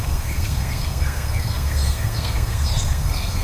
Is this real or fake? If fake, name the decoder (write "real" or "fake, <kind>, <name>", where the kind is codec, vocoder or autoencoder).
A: fake, codec, SNAC